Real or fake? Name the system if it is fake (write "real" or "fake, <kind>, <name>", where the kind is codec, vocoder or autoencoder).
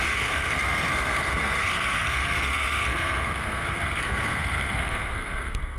fake, codec, SNAC